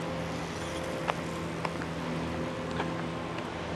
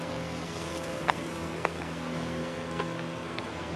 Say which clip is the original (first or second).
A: first